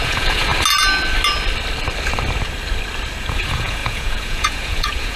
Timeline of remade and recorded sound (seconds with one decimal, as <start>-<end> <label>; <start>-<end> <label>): 0.0-0.5 remade; 0.5-3.3 recorded; 3.3-5.2 remade